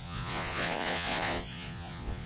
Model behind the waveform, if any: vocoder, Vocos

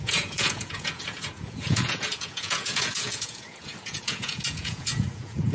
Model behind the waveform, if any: vocoder, Vocos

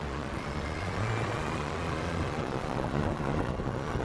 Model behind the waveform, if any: vocoder, Vocos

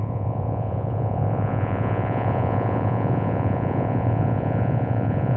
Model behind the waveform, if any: vocoder, Vocos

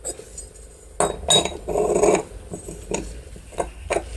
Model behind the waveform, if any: none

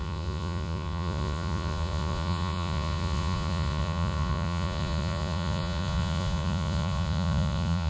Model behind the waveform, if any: vocoder, Vocos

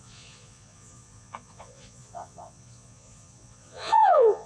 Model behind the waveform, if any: vocoder, Vocos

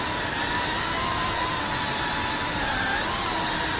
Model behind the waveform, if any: none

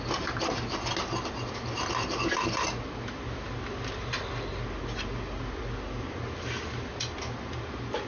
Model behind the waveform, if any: none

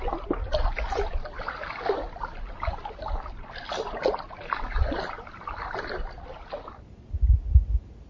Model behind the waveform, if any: none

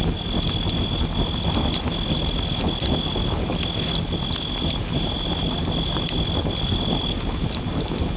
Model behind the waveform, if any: none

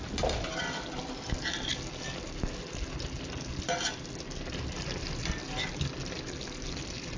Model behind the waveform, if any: none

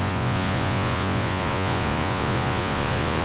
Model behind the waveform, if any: vocoder, Vocos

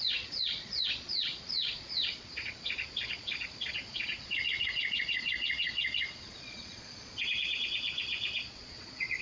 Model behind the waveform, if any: vocoder, Vocos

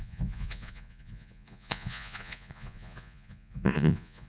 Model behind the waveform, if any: vocoder, Vocos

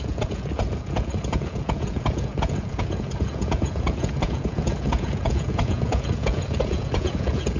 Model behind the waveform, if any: vocoder, Vocos